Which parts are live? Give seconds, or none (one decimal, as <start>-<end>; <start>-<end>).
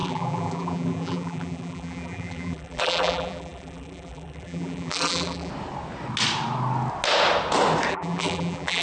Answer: 5.5-7.9